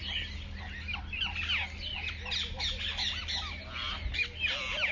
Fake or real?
real